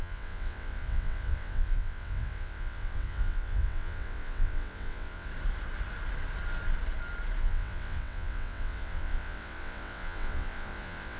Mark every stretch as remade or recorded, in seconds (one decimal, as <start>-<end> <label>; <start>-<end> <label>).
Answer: 0.0-5.3 remade; 5.3-7.4 recorded; 7.4-11.2 remade